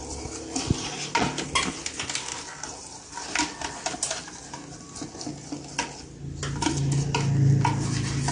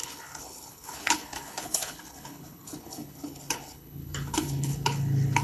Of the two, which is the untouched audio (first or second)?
first